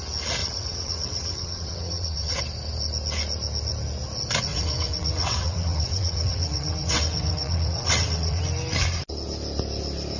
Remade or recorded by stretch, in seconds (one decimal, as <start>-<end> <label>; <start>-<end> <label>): 0.0-0.4 recorded; 0.4-2.4 remade; 2.4-4.5 recorded; 4.5-8.4 remade; 8.4-10.2 recorded